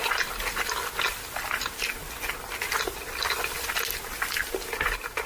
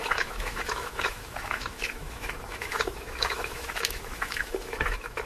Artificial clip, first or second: second